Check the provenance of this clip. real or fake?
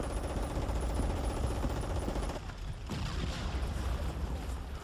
real